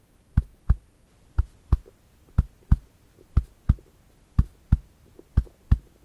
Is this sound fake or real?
real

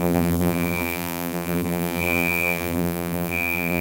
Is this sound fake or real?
fake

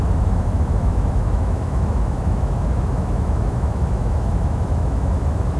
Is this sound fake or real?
fake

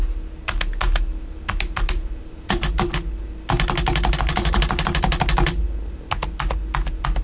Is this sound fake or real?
real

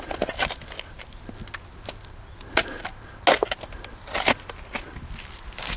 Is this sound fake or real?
real